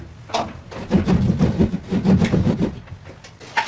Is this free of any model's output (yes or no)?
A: yes